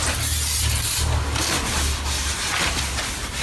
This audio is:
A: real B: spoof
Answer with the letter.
A